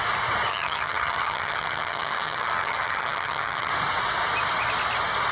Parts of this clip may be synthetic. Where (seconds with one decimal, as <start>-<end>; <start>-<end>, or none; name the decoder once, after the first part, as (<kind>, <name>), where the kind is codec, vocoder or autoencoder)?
0.5-3.7 (vocoder, HiFi-GAN)